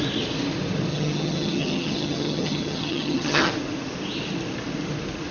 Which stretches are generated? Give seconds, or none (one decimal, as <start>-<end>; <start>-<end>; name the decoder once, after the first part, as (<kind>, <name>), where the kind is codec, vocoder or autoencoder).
0.9-3.5 (vocoder, HiFi-GAN)